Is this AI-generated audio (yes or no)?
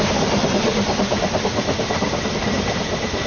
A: no